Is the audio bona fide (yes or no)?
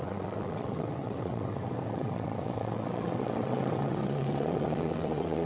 no